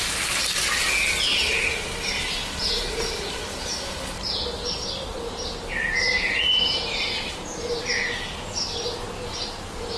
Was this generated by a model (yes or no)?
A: no